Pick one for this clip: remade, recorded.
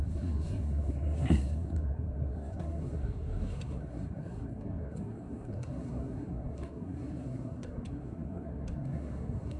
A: remade